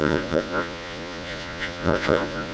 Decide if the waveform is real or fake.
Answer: fake